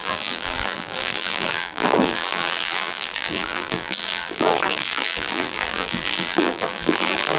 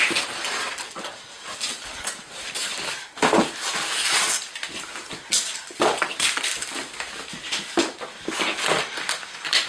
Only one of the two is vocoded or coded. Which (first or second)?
first